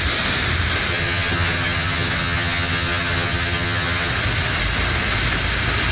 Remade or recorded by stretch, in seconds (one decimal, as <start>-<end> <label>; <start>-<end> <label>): 0.0-0.9 recorded; 0.9-4.1 remade; 4.1-5.9 recorded